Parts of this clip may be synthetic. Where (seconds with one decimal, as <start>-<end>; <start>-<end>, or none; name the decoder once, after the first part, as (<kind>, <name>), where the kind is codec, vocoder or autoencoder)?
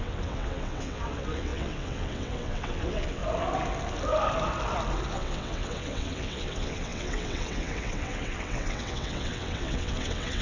0.0-3.2 (vocoder, WaveNeXt); 5.1-10.4